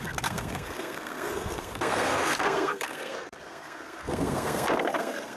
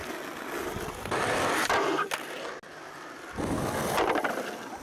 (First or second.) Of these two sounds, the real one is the second